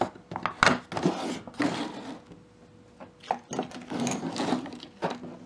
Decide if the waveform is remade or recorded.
recorded